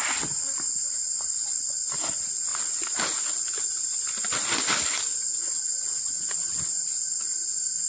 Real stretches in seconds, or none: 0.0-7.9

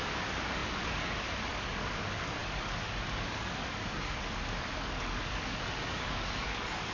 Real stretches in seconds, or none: none